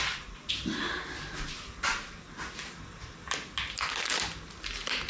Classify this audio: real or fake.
real